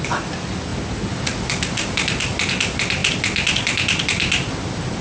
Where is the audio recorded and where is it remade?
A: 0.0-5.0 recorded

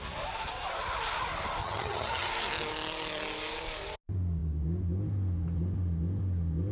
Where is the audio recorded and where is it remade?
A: 0.0-1.6 recorded; 1.6-2.3 remade; 2.3-6.7 recorded

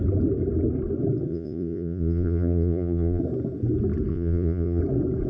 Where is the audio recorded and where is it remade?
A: 0.0-1.3 recorded; 1.3-3.2 remade; 3.2-4.1 recorded; 4.1-4.8 remade; 4.8-5.3 recorded

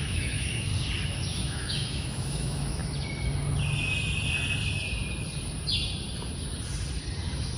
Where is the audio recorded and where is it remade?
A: 0.0-0.7 remade; 0.7-1.3 recorded; 1.3-2.8 remade; 2.8-7.6 recorded

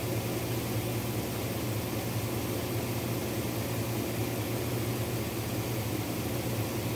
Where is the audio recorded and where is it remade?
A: 0.0-7.0 recorded

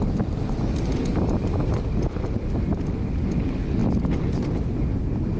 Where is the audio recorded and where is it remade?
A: 0.0-5.4 recorded